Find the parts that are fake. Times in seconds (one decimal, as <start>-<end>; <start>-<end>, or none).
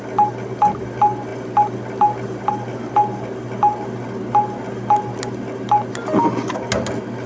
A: none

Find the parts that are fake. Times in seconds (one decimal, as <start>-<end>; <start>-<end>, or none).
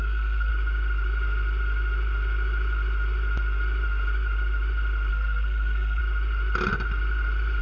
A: 0.0-0.5; 5.1-6.0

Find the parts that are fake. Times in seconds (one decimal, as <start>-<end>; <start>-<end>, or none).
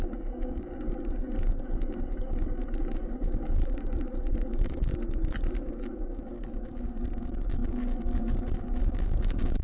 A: 0.0-4.9; 5.6-9.6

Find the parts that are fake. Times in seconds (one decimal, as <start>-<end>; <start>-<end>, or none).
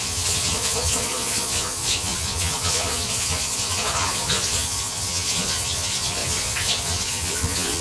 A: 0.0-7.8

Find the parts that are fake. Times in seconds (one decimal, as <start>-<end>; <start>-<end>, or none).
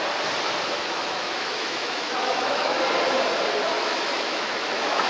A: 0.8-2.8; 3.8-5.1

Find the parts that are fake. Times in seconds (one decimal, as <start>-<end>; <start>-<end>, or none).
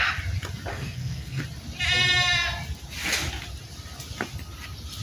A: 0.7-1.4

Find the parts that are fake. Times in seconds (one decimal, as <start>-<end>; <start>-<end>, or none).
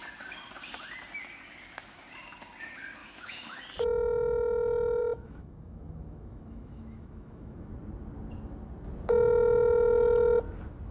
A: 3.0-3.6; 5.0-7.7